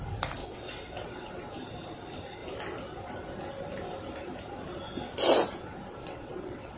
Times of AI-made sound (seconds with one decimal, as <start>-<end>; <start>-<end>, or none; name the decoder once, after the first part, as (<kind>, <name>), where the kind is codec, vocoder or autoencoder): 0.4-1.3 (vocoder, WaveNeXt); 6.0-6.8

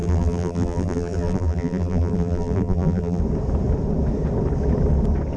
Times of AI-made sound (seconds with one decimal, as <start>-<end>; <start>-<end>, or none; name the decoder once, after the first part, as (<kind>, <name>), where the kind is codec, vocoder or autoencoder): 0.0-3.2 (vocoder, BigVGAN v2)